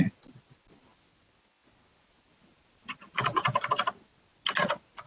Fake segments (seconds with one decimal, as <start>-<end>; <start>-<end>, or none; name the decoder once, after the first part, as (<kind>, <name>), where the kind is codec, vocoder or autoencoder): 2.5-3.6 (vocoder, BigVGAN v2)